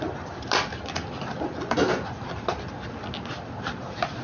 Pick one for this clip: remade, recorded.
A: recorded